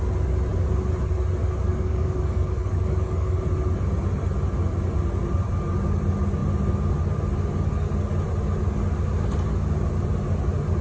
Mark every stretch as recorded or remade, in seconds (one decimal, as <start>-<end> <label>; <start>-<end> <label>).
0.0-1.7 recorded; 1.7-3.4 remade; 3.4-10.8 recorded